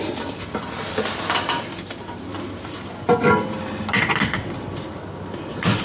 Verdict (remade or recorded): recorded